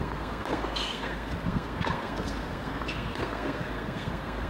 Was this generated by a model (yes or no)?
yes